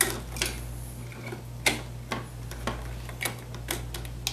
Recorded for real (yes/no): yes